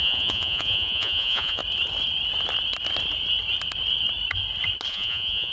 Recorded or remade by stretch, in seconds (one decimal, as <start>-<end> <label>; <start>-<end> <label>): 0.0-1.6 remade; 1.6-4.9 recorded; 4.9-5.5 remade